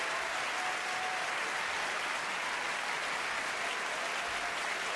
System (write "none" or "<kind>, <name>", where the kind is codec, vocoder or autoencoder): none